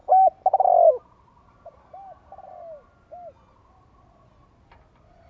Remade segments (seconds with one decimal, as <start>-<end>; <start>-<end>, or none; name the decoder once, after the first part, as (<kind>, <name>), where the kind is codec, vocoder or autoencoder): none